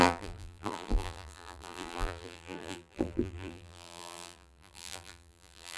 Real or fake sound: fake